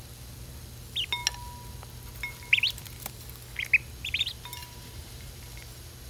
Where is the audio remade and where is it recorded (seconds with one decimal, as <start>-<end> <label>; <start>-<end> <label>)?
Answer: 0.0-4.6 recorded; 4.6-5.3 remade; 5.3-6.1 recorded